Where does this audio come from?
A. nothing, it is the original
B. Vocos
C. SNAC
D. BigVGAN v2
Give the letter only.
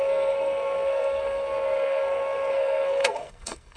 C